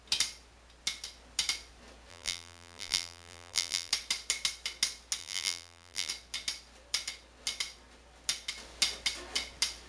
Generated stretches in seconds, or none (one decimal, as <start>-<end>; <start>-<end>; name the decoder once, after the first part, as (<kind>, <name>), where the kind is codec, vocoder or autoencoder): 2.1-3.9 (vocoder, BigVGAN v2); 5.2-6.1